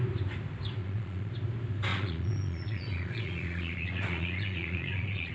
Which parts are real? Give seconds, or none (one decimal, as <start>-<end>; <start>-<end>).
0.0-0.8; 1.3-1.9